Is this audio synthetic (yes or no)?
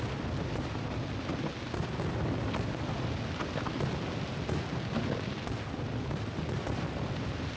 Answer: no